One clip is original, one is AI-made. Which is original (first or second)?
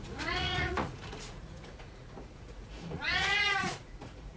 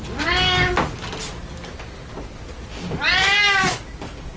second